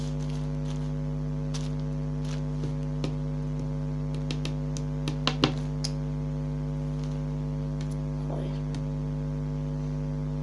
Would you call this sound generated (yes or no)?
no